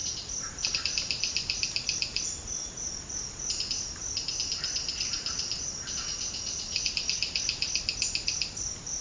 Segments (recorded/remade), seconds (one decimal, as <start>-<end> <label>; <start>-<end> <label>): 0.0-0.5 recorded; 0.5-9.0 remade